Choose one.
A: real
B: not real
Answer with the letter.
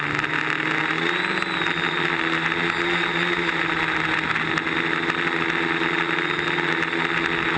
A